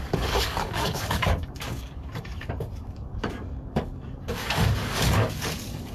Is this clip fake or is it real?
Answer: fake